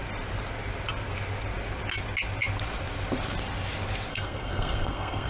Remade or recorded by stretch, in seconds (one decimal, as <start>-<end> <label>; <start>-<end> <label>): 0.0-4.1 recorded; 4.1-5.3 remade